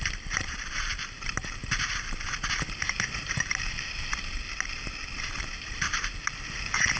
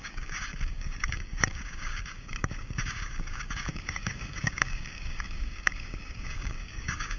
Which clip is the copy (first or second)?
second